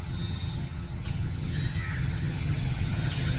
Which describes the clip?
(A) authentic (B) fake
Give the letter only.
B